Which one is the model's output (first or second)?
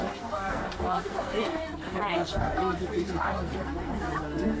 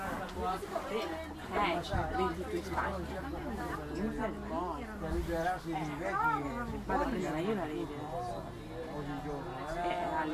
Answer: first